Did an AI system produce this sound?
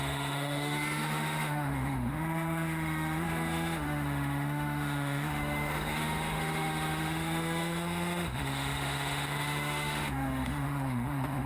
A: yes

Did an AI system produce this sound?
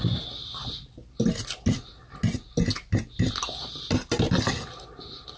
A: no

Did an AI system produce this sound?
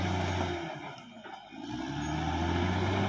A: no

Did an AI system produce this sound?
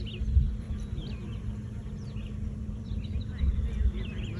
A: yes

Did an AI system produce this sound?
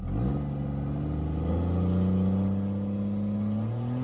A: no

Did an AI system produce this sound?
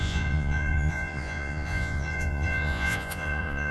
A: yes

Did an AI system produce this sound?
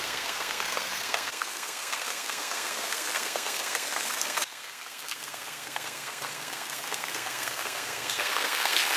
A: yes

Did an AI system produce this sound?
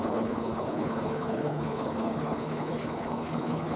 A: yes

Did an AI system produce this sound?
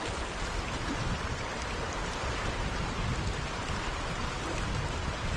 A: no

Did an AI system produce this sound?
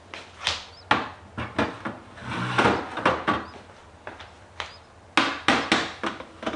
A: no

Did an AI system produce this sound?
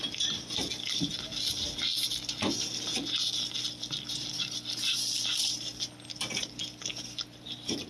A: no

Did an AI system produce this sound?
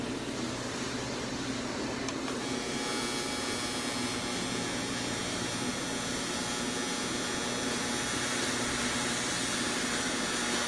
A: no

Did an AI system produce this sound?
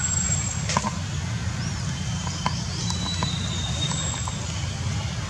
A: no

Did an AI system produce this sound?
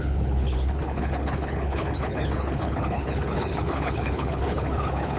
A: yes